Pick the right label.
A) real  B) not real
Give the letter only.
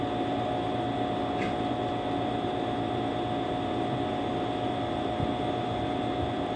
A